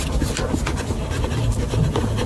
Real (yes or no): yes